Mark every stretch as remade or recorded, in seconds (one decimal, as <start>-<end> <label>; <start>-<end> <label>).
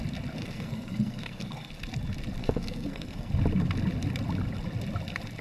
0.0-0.4 recorded; 0.4-1.7 remade; 1.7-2.4 recorded; 2.4-3.3 remade; 3.3-5.4 recorded